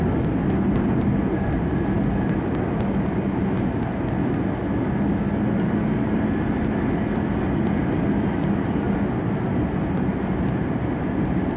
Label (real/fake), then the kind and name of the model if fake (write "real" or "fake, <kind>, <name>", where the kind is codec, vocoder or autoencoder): real